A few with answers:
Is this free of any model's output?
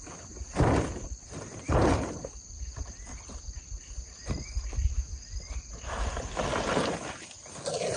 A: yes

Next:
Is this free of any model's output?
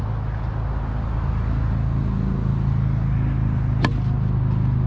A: yes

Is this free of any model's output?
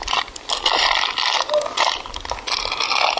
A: yes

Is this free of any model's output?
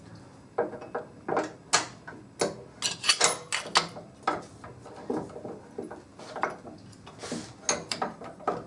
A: yes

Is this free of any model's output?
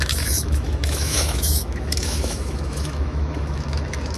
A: no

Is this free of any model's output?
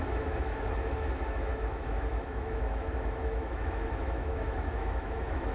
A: no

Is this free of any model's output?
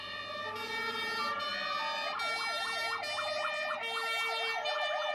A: yes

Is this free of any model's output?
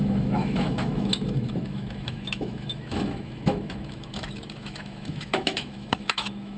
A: no